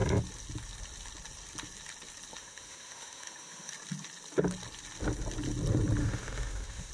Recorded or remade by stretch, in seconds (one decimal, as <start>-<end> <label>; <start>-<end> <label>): 0.0-2.4 recorded; 2.4-3.7 remade; 3.7-6.0 recorded; 6.0-6.9 remade